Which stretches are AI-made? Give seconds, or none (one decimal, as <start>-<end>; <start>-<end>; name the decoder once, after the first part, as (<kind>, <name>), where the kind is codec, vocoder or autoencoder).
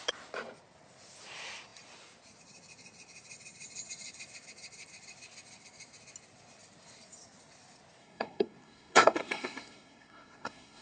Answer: 8.0-10.8 (codec, SNAC)